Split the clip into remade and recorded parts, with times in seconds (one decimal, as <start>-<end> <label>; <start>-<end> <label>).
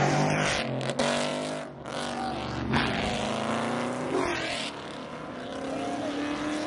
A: 0.0-6.7 recorded